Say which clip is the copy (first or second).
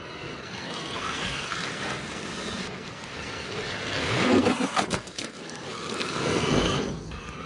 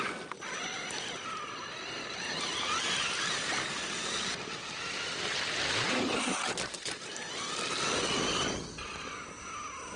first